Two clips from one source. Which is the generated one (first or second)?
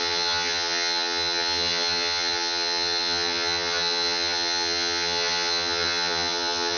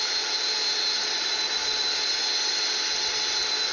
first